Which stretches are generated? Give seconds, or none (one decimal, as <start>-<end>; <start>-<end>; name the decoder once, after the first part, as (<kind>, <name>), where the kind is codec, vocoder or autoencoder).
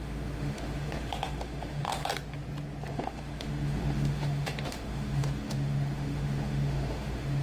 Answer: 0.0-2.0 (autoencoder, DAC-VAE); 2.9-7.4